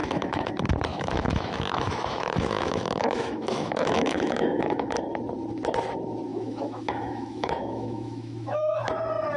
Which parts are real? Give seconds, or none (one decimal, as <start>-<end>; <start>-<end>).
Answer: 0.5-0.9; 4.9-6.3; 8.8-9.4